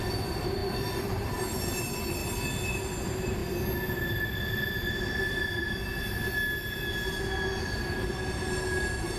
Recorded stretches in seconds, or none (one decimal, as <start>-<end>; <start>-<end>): 2.2-3.0; 3.4-4.9; 5.9-7.7